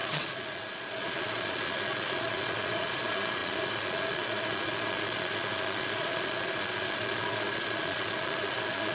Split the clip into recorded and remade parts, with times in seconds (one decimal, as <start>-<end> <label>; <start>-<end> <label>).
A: 0.0-8.9 remade